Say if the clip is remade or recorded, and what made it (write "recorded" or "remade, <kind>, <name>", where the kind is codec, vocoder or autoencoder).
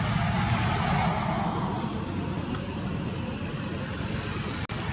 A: recorded